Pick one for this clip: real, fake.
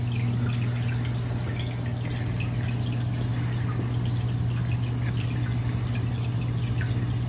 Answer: real